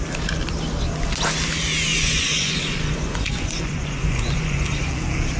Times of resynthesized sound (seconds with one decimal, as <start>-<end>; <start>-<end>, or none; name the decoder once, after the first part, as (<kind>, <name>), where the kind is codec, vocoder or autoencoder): 1.9-4.9 (vocoder, Vocos)